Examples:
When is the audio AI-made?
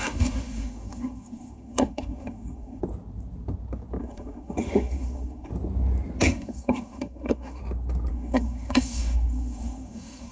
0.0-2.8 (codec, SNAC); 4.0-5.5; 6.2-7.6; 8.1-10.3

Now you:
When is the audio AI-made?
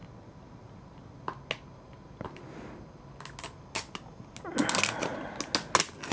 none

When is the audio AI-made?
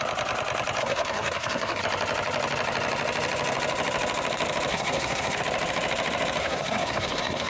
0.8-1.8 (codec, SNAC); 4.7-5.4; 6.4-7.5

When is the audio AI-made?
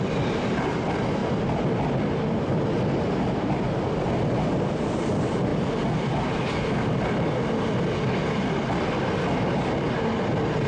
none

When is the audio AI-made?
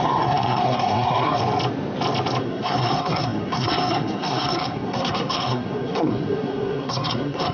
0.0-1.4 (codec, SNAC); 2.4-7.5